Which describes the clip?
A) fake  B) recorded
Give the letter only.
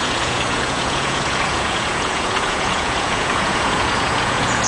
A